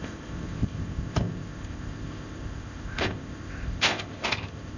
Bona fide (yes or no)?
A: no